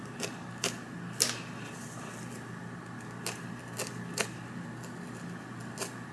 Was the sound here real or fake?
real